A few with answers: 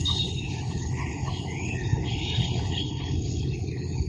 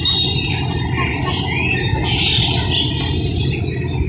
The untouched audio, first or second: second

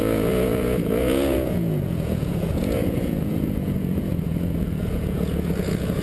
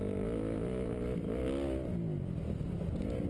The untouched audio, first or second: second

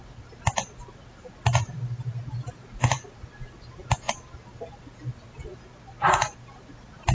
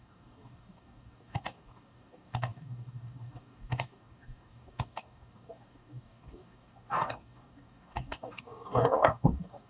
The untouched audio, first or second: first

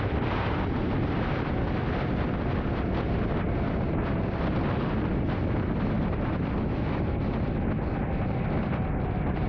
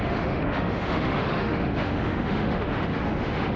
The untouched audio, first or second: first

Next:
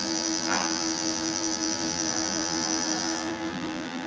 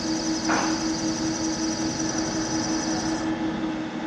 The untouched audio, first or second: second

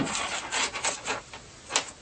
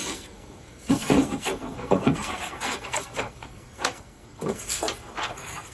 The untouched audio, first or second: first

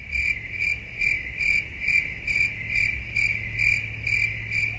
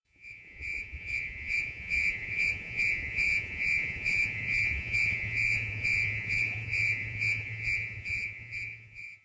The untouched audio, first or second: first